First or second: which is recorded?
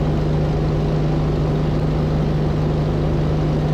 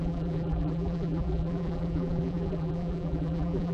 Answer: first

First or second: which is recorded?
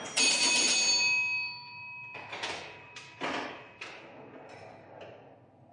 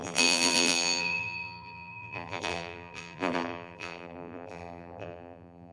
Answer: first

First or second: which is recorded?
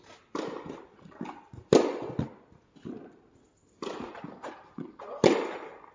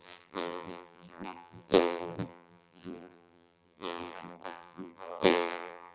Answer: first